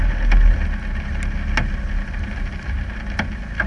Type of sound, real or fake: real